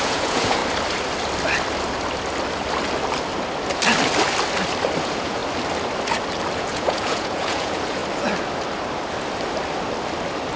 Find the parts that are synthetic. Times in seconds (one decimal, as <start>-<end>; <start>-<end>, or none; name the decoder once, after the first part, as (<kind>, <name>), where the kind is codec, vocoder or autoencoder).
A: 0.0-0.6 (vocoder, Vocos); 5.0-5.4; 6.6-8.0

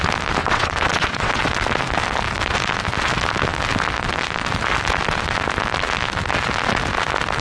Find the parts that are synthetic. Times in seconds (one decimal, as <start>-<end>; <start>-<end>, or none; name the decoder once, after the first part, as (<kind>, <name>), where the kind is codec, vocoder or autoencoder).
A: 0.4-1.4 (vocoder, WaveNeXt)